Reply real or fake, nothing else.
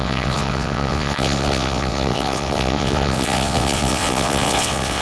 fake